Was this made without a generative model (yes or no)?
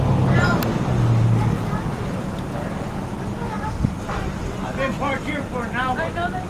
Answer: yes